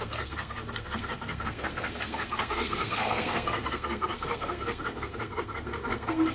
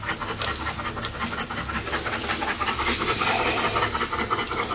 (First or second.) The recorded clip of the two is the second